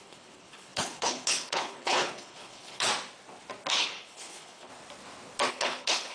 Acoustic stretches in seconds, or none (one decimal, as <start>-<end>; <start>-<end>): 2.9-3.7; 4.7-5.5